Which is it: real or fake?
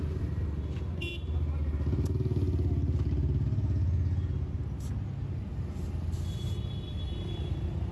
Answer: real